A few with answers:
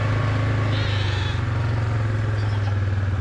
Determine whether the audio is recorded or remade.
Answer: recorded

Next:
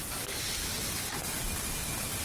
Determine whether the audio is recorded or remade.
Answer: recorded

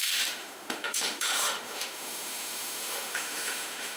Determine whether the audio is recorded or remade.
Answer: remade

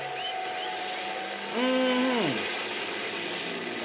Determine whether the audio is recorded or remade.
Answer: recorded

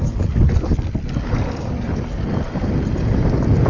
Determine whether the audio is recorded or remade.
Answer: recorded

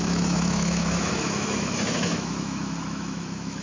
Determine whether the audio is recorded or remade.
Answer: remade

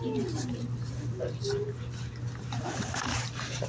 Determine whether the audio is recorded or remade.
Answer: recorded